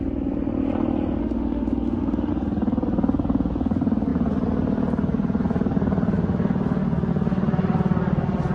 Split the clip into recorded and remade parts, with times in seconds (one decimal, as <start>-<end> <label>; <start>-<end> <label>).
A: 0.0-1.2 recorded; 1.2-2.3 remade; 2.3-8.5 recorded